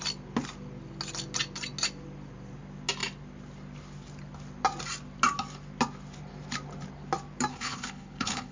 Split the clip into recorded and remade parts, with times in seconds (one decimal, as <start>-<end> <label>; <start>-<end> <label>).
0.0-7.5 recorded; 7.5-8.5 remade